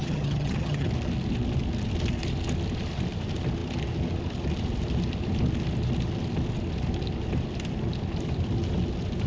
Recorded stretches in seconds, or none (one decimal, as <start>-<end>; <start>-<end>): 0.9-9.3